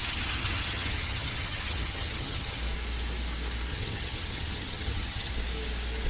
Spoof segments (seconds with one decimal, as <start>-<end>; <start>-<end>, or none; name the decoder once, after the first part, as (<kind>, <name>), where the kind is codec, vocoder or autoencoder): 0.0-2.6 (vocoder, HiFi-GAN); 3.7-5.3